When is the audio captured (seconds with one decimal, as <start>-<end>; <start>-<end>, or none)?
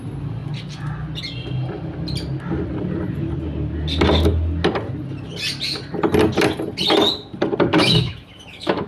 0.0-7.7